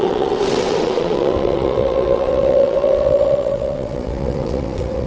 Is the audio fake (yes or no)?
yes